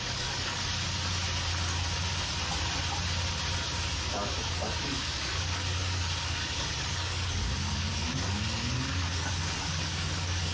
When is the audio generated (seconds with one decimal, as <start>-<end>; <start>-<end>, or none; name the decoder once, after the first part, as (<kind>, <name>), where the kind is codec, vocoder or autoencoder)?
0.0-0.6 (codec, DAC); 4.2-10.5